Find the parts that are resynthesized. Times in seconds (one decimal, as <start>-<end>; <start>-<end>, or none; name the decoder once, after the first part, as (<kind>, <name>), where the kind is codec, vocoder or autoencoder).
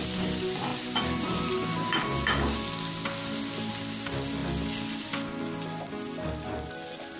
none